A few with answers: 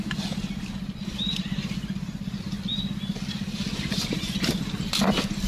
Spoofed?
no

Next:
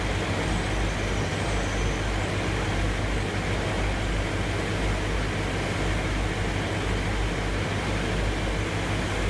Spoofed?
no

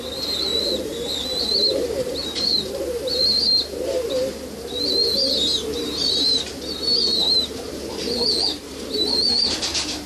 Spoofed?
yes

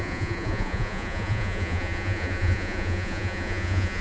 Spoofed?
yes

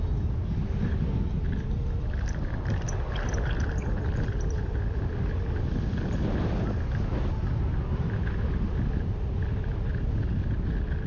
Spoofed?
no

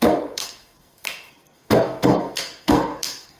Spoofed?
yes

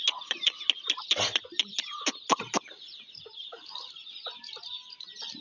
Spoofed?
no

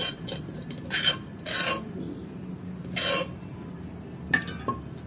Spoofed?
no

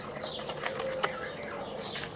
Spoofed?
no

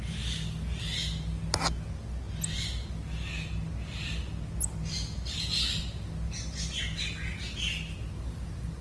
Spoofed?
no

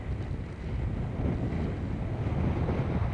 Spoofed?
no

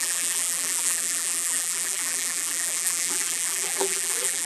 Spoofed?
yes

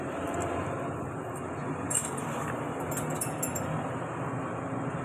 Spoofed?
no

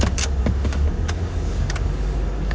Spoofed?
yes